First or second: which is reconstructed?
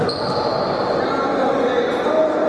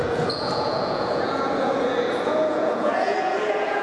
second